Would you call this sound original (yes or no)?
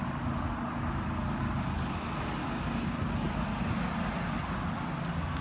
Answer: yes